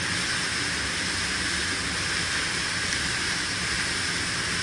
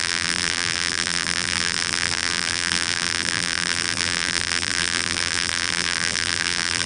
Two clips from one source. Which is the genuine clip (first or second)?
first